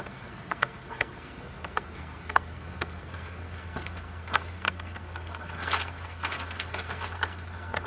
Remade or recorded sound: remade